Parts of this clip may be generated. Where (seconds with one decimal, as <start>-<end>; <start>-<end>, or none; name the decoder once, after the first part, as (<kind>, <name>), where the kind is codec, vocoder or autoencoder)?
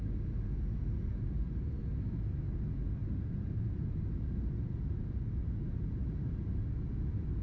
1.1-1.8 (vocoder, BigVGAN v2); 3.0-6.7